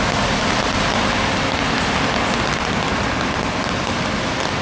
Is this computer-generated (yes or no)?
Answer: no